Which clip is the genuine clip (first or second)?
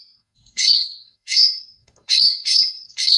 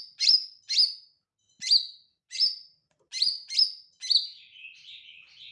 second